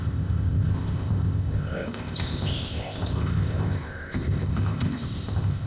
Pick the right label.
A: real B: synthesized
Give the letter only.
B